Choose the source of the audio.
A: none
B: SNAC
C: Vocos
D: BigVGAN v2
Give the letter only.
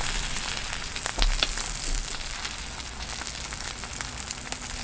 A